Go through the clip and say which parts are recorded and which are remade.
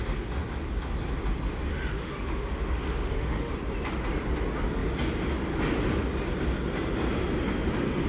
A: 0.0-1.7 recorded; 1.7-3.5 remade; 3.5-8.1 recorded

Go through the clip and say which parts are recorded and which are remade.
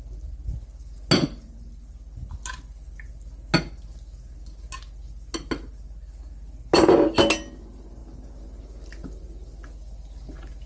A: 0.0-10.7 recorded